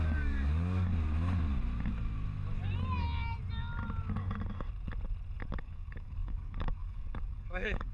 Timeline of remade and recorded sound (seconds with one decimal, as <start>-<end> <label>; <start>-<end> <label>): 0.0-0.9 remade; 0.9-5.6 recorded; 5.6-7.9 remade